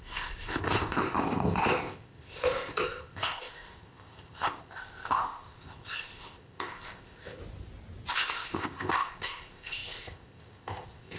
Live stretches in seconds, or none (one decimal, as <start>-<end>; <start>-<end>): 7.4-8.1